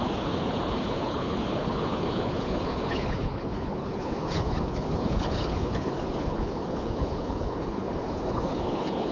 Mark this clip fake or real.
fake